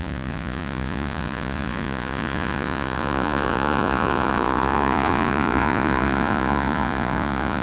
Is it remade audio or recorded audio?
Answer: remade